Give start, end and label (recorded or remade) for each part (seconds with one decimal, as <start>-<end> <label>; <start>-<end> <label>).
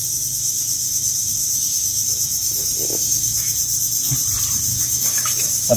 0.0-3.5 remade; 3.5-4.7 recorded; 4.7-5.8 remade